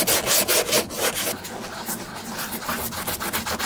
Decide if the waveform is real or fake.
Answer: real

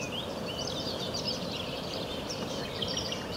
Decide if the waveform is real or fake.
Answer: real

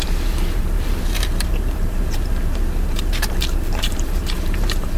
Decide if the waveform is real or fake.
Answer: fake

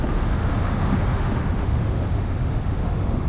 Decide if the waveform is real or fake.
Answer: fake